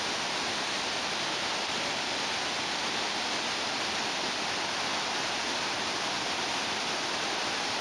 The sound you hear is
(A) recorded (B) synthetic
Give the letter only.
A